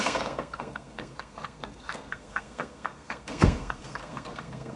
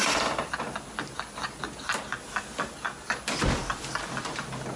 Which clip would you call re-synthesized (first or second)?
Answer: first